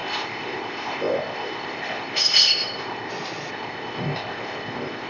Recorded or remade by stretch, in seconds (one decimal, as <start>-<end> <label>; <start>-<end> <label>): 0.0-3.1 remade; 3.1-3.5 recorded; 3.5-5.1 remade